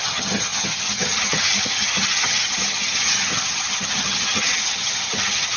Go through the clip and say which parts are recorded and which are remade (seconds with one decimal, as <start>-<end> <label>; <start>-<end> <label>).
0.0-5.6 remade